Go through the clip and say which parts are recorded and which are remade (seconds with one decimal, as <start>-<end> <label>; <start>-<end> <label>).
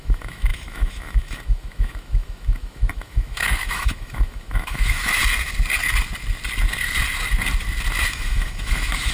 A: 0.0-5.2 remade; 5.2-8.1 recorded; 8.1-9.1 remade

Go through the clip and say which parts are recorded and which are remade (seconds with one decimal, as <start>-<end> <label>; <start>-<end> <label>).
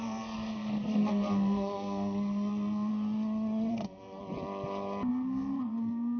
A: 0.0-2.9 remade; 2.9-3.7 recorded; 3.7-4.2 remade; 4.2-5.1 recorded; 5.1-6.2 remade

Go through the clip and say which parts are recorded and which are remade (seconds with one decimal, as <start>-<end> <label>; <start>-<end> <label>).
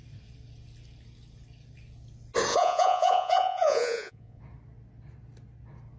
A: 0.0-2.5 recorded; 2.5-4.4 remade; 4.4-6.0 recorded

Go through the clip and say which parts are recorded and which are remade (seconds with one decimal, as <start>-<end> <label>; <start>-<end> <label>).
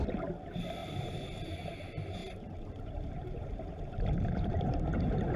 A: 0.0-0.8 recorded; 0.8-1.5 remade; 1.5-2.2 recorded; 2.2-5.4 remade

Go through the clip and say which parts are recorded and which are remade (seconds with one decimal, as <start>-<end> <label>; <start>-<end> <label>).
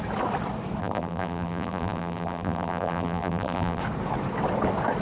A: 0.0-0.8 recorded; 0.8-3.8 remade; 3.8-5.0 recorded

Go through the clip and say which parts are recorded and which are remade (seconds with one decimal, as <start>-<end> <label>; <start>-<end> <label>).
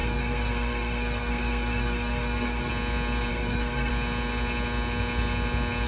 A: 0.0-2.7 remade; 2.7-3.3 recorded; 3.3-3.9 remade; 3.9-5.9 recorded